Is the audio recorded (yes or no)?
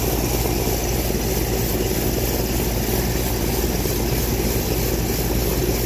yes